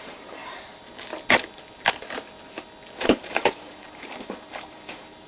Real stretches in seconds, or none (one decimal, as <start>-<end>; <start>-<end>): 0.4-3.0